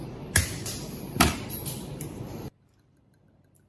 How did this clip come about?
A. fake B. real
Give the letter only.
A